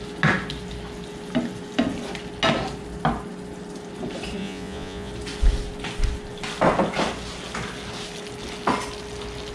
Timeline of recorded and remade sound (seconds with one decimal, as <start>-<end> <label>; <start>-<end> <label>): 0.0-4.4 recorded; 4.4-5.1 remade; 5.1-9.5 recorded